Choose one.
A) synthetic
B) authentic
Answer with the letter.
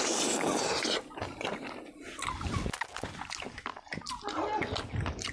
B